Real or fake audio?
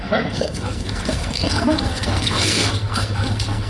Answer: fake